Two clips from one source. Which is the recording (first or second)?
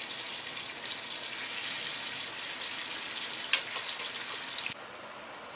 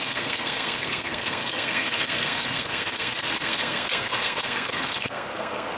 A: first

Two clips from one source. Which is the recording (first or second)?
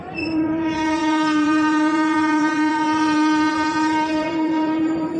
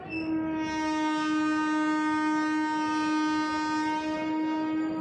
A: second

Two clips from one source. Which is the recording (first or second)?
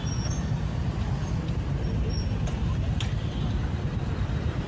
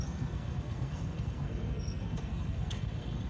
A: first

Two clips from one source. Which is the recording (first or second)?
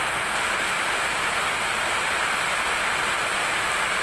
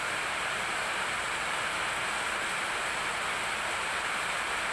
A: second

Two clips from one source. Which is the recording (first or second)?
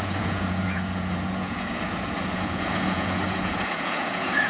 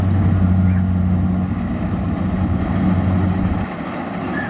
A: second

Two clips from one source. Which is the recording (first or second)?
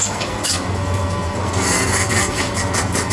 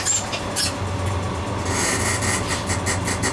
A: second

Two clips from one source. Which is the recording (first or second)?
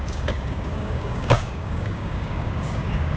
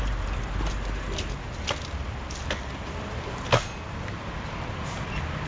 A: second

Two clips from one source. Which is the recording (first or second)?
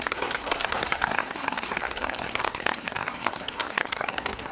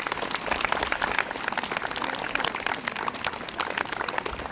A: second